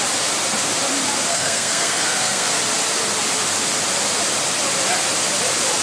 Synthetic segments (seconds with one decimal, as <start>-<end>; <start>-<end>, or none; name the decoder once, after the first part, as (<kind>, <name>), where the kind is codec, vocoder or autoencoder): 1.3-2.5 (codec, SNAC)